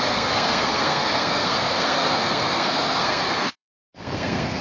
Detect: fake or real fake